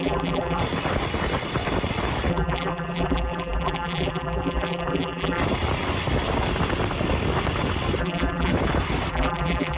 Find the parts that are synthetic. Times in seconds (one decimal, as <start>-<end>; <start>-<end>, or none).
0.0-0.6; 2.3-5.4; 8.0-8.5; 9.1-9.8